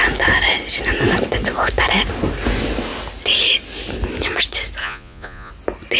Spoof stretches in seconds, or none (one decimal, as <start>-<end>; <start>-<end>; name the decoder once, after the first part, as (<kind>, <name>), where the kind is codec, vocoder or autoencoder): 4.8-5.5 (vocoder, Vocos)